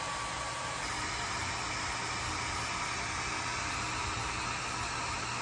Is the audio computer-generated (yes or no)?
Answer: no